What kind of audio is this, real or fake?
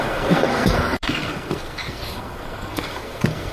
fake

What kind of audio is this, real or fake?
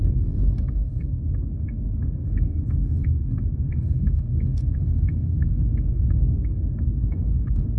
fake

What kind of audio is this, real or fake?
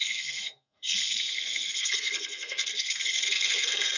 fake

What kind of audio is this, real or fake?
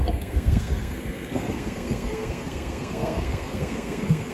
fake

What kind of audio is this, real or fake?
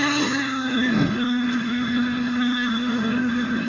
fake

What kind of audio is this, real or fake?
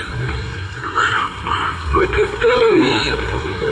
fake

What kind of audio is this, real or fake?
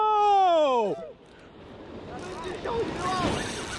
real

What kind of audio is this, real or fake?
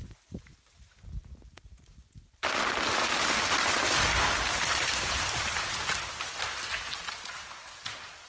real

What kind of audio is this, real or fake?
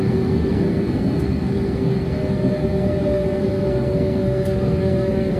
fake